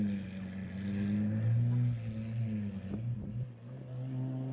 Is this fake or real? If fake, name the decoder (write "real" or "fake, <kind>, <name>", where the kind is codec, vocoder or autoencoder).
real